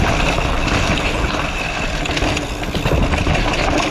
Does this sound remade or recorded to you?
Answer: recorded